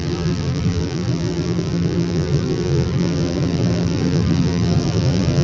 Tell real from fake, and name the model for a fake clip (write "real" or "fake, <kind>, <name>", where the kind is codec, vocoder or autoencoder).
fake, vocoder, BigVGAN v2